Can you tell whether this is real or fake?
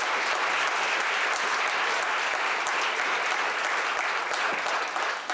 real